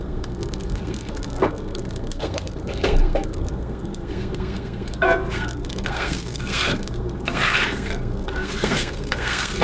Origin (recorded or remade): remade